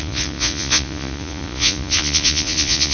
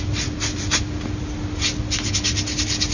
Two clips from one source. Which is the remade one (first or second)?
first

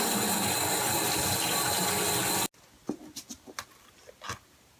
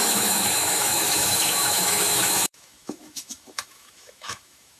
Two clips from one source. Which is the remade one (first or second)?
second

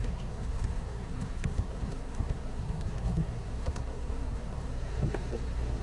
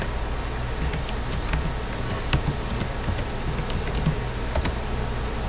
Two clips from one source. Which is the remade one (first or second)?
first